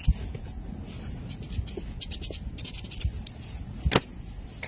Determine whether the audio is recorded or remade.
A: recorded